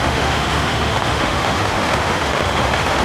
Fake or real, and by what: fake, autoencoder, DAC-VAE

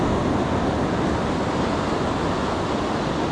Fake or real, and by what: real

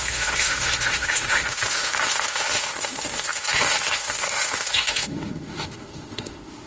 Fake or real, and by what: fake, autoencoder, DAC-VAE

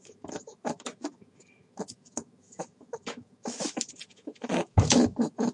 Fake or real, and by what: fake, autoencoder, DAC-VAE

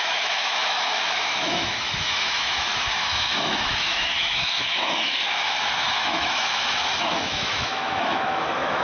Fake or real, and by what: fake, autoencoder, DAC-VAE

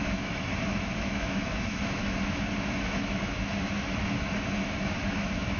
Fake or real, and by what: fake, autoencoder, DAC-VAE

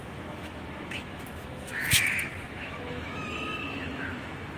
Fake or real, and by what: fake, autoencoder, DAC-VAE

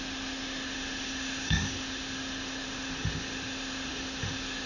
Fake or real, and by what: fake, autoencoder, DAC-VAE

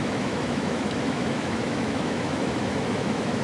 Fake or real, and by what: fake, autoencoder, DAC-VAE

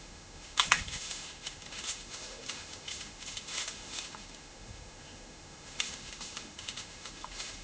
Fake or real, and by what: fake, autoencoder, DAC-VAE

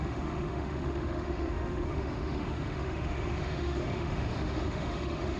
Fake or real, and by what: fake, autoencoder, DAC-VAE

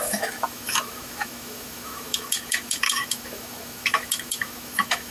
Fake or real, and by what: fake, autoencoder, DAC-VAE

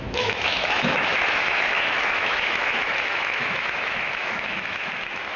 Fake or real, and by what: fake, autoencoder, DAC-VAE